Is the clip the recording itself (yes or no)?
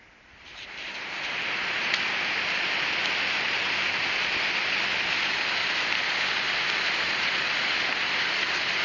yes